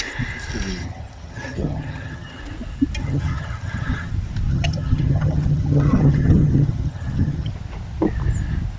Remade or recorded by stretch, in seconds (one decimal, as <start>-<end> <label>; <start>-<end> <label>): 0.0-0.8 recorded; 0.8-2.4 remade; 2.4-3.0 recorded; 3.0-4.1 remade; 4.1-4.5 recorded; 4.5-7.5 remade; 7.5-8.8 recorded